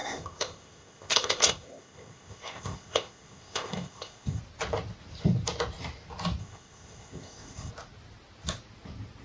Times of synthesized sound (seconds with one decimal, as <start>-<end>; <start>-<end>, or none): 0.0-4.4; 6.4-7.7